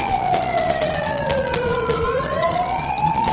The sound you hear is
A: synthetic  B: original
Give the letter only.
A